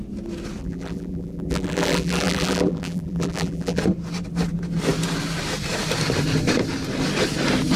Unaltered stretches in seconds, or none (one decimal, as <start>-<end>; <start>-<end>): 0.0-0.6; 3.8-7.8